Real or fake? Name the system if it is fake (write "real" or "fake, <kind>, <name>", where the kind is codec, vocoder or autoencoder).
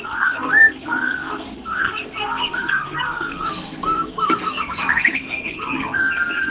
fake, codec, SNAC